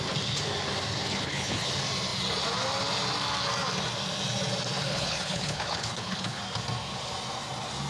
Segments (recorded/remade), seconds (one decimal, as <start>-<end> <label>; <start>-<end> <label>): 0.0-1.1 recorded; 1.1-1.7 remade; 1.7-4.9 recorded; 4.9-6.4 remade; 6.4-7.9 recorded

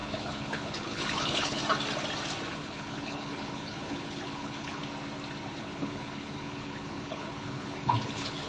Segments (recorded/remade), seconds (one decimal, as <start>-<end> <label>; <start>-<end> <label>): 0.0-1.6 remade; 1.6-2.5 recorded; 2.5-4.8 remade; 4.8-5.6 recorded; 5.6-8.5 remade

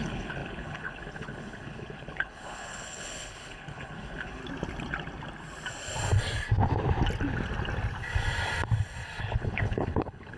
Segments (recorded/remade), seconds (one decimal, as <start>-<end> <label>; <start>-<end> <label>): 0.0-4.4 remade; 4.4-9.2 recorded; 9.2-10.4 remade